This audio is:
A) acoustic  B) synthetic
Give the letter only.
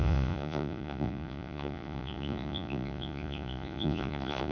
B